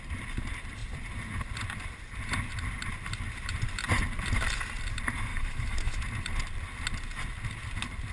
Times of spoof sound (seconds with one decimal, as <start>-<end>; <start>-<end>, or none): 5.3-6.0